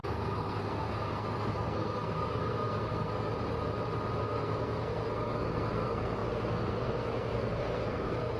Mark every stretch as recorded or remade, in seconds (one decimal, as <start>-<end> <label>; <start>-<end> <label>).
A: 0.0-3.3 remade; 3.3-4.2 recorded; 4.2-8.4 remade